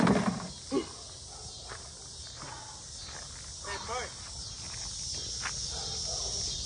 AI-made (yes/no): no